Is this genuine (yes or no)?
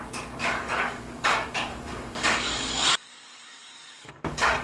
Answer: no